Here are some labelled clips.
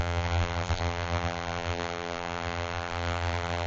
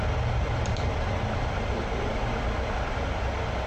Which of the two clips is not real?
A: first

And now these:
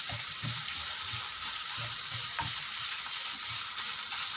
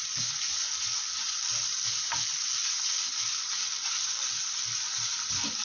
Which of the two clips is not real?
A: first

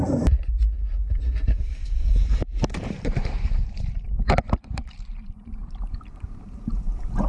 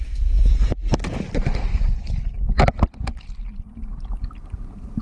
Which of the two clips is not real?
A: first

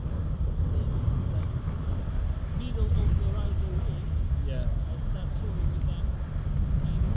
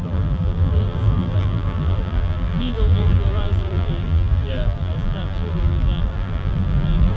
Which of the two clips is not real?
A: second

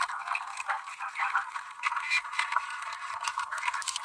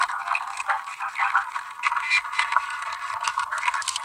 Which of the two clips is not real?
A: first